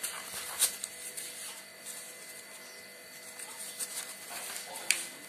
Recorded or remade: recorded